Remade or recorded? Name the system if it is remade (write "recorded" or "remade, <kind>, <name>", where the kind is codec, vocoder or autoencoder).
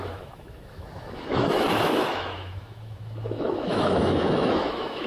remade, autoencoder, DAC-VAE